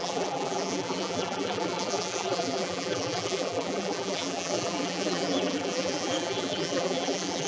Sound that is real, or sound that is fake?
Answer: fake